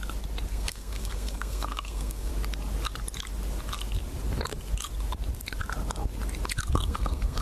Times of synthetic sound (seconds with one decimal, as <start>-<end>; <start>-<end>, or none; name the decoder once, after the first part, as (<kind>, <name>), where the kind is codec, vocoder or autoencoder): 0.5-2.3 (codec, SNAC); 6.7-7.4